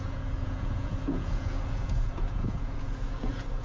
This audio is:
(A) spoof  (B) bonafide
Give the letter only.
A